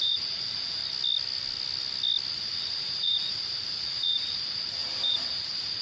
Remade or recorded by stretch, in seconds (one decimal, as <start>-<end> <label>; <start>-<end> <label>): 0.0-0.8 remade; 0.8-2.3 recorded; 2.3-5.8 remade

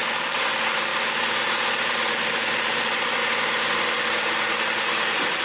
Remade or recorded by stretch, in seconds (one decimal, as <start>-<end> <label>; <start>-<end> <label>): 0.0-0.9 remade; 0.9-1.7 recorded; 1.7-3.2 remade; 3.2-4.5 recorded; 4.5-5.4 remade

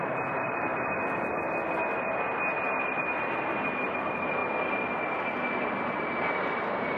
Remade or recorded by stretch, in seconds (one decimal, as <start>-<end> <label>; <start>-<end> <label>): 0.0-0.7 remade; 0.7-3.2 recorded; 3.2-4.4 remade; 4.4-6.0 recorded; 6.0-7.0 remade